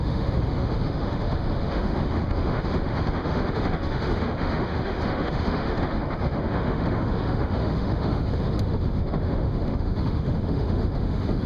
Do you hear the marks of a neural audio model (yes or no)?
yes